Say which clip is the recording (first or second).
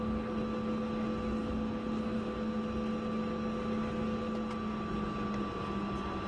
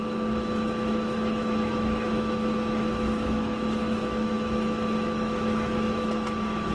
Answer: first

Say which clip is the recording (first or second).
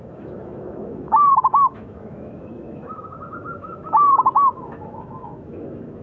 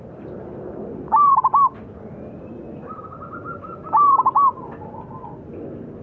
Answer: second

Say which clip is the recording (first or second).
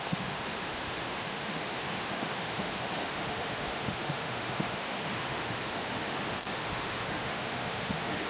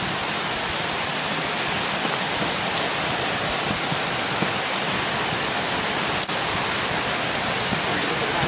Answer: second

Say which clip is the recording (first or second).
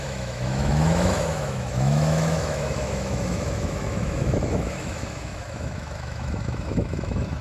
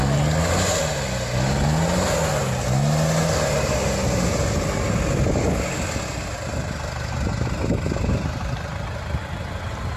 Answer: second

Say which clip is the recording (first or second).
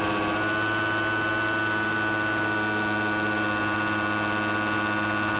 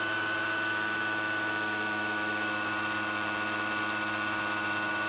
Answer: first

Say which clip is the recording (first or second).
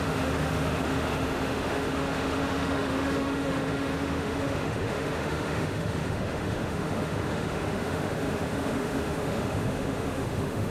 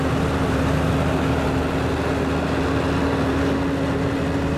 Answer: second